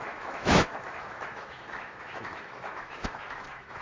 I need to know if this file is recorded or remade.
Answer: remade